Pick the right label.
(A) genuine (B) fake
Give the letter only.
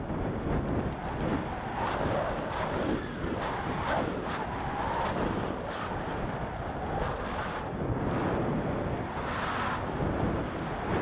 A